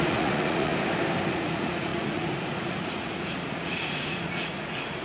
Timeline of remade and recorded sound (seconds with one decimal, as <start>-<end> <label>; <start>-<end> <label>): 0.0-0.7 remade; 0.7-1.3 recorded; 1.3-5.0 remade